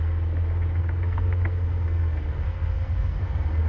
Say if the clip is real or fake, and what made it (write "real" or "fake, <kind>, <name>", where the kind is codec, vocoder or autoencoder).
fake, codec, SNAC